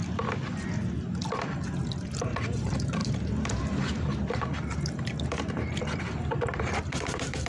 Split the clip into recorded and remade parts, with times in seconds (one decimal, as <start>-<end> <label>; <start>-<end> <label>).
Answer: 0.0-2.4 recorded; 2.4-7.5 remade